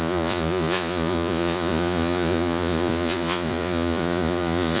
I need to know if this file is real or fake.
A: fake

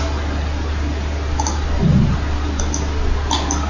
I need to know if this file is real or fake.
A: real